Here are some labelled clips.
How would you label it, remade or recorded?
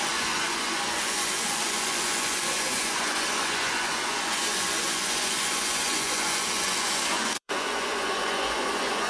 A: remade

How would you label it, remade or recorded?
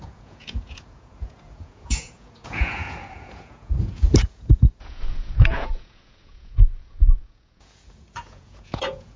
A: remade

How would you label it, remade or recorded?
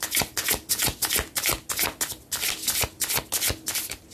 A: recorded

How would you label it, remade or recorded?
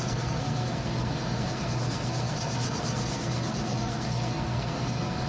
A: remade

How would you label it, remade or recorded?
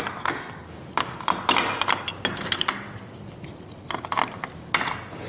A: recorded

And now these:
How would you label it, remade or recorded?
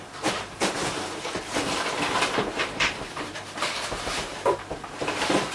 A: remade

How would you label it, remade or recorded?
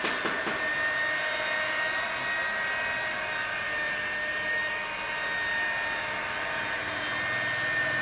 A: recorded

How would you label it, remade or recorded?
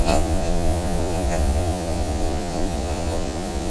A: remade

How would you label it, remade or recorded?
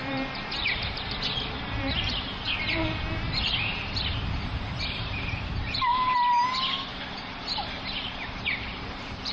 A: remade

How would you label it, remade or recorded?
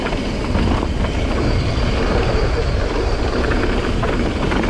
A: recorded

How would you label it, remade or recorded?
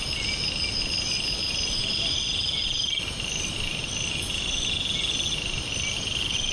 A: recorded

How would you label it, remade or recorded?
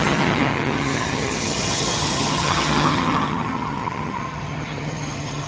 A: remade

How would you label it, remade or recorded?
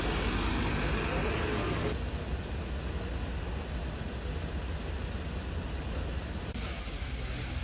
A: recorded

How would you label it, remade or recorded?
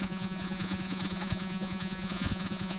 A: remade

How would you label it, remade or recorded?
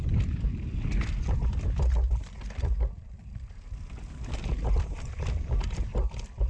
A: recorded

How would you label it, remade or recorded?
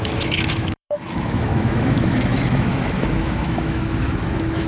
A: remade